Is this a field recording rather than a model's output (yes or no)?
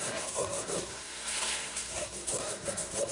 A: no